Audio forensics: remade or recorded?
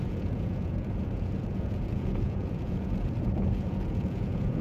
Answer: remade